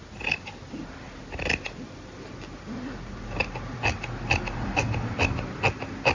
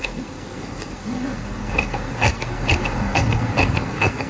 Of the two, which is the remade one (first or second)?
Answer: second